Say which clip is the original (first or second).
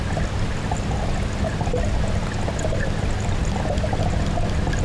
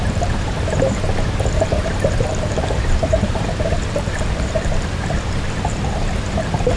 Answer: first